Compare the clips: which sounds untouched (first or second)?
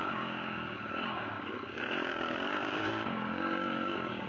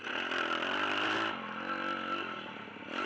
second